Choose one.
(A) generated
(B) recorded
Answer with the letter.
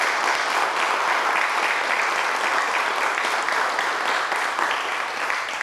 B